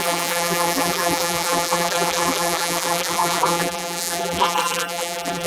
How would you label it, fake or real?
fake